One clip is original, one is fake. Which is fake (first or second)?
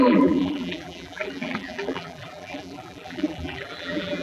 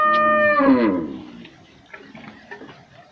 first